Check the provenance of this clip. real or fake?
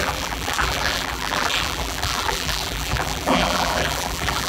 fake